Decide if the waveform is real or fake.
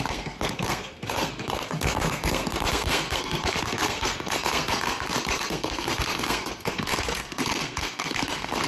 fake